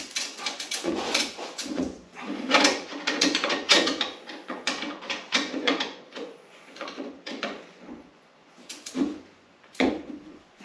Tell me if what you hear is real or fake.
fake